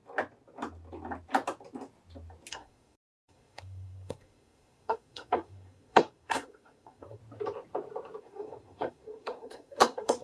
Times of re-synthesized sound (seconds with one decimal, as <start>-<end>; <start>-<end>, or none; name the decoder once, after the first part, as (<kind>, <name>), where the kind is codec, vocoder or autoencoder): 2.5-7.2 (codec, SNAC); 8.2-10.2